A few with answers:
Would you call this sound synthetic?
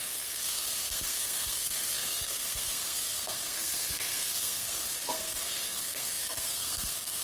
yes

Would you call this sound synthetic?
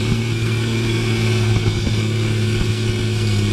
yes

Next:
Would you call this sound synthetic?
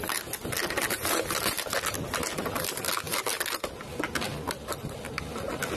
no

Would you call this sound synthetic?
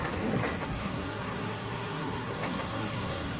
yes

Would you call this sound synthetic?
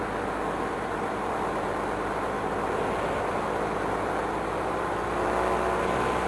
no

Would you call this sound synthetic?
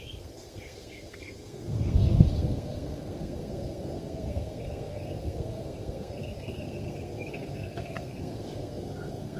yes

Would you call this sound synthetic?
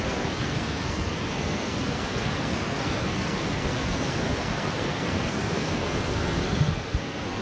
yes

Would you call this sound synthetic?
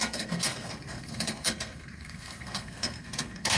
yes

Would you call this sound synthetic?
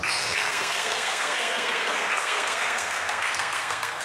yes